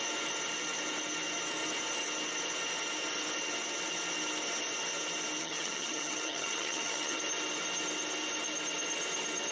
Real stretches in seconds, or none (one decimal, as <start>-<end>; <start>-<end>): 0.0-5.4; 7.2-9.5